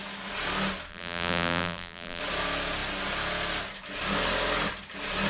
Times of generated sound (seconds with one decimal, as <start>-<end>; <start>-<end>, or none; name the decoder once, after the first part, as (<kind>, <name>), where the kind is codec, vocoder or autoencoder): 0.9-2.2 (vocoder, BigVGAN v2)